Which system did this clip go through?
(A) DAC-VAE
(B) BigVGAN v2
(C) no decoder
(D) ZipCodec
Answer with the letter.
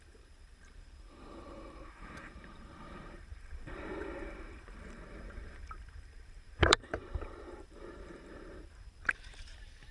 B